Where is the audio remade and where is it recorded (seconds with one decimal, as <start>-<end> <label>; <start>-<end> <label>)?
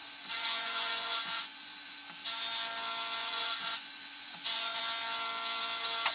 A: 0.0-2.0 remade; 2.0-3.2 recorded; 3.2-4.8 remade; 4.8-6.1 recorded